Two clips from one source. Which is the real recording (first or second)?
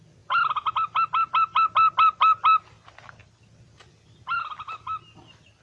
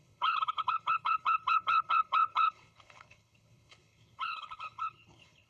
first